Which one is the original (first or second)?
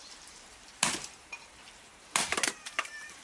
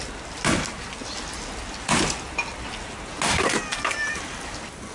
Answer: second